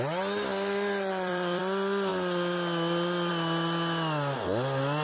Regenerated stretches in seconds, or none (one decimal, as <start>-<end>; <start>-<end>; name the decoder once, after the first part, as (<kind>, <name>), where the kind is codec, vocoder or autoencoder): 0.5-1.6 (vocoder, BigVGAN v2)